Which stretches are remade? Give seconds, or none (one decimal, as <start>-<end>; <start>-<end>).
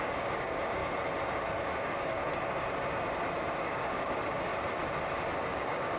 0.0-0.8; 1.6-2.2; 3.6-4.5; 5.4-6.0